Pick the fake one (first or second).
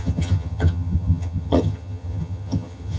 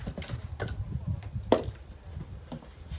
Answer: first